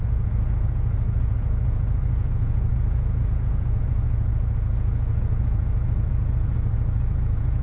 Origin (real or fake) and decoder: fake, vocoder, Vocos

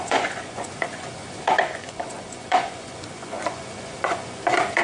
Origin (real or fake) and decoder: fake, vocoder, Vocos